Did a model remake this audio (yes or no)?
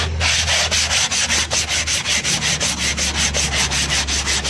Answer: no